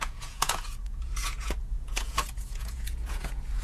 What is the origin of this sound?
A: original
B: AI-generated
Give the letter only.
B